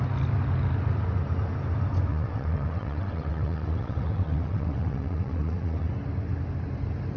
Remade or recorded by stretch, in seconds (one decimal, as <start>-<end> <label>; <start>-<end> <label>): 0.0-2.1 recorded; 2.1-5.9 remade; 5.9-7.2 recorded